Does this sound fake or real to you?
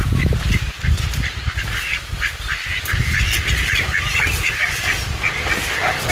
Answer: real